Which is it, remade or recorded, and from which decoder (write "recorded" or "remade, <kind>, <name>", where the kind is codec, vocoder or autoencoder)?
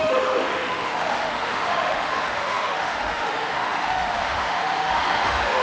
remade, autoencoder, DAC-VAE